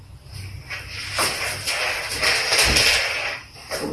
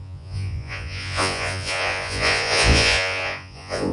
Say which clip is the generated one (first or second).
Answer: second